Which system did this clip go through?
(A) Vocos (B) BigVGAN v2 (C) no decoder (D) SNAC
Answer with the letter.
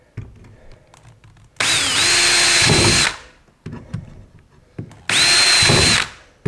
C